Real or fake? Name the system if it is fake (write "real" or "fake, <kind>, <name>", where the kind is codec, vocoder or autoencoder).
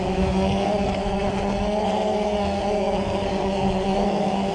fake, codec, SNAC